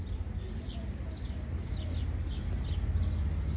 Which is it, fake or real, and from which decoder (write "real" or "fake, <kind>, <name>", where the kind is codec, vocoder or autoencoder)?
real